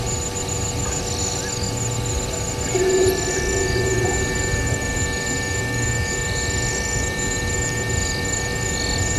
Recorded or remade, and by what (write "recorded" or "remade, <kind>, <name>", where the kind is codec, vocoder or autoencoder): recorded